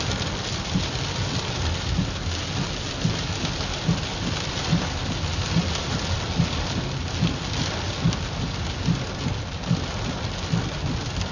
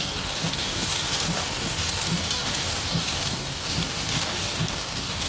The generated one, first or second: second